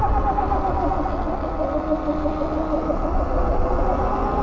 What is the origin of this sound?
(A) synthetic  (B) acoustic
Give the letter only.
B